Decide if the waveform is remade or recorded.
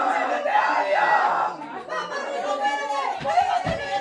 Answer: recorded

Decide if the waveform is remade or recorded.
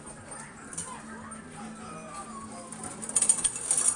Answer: recorded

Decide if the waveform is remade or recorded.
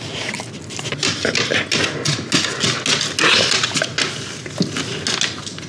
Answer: recorded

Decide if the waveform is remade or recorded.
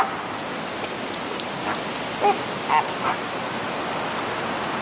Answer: recorded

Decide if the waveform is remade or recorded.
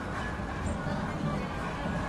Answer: recorded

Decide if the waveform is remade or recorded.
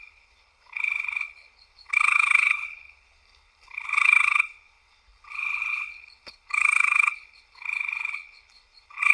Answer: remade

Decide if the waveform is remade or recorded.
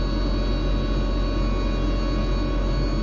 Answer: recorded